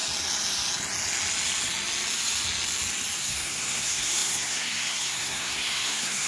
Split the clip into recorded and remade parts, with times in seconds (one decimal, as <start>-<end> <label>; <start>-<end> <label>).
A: 0.0-3.2 recorded; 3.2-6.3 remade